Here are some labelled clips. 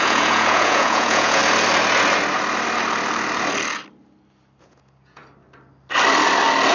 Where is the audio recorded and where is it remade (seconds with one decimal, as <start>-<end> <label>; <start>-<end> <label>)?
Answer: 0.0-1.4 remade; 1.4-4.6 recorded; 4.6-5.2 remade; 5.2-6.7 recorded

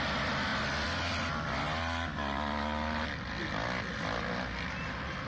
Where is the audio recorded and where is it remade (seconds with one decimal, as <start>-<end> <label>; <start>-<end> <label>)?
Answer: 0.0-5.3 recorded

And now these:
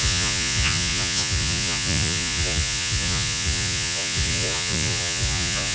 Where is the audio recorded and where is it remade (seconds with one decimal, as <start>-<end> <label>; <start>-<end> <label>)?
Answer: 0.0-5.7 remade

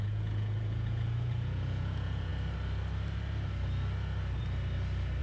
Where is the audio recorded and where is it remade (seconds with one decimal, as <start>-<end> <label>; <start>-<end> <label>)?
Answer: 0.0-2.3 remade; 2.3-5.2 recorded

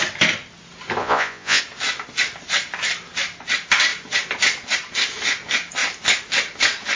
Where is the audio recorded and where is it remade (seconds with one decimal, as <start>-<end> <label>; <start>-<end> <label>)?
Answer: 0.0-1.0 recorded; 1.0-1.6 remade; 1.6-7.0 recorded